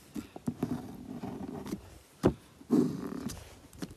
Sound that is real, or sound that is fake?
real